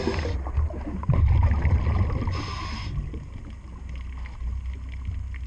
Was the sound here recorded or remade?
recorded